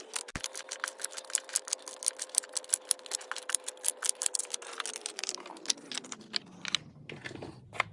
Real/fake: real